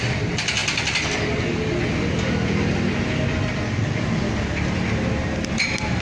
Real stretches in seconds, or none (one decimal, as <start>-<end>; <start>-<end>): 0.0-6.0